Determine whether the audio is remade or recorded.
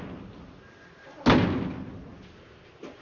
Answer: recorded